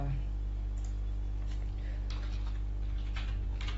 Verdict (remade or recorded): recorded